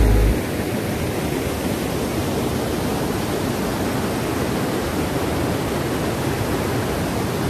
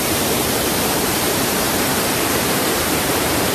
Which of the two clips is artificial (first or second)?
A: second